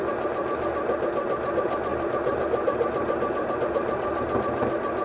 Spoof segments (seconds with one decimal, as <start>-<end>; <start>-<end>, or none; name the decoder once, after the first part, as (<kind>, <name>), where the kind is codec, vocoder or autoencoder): none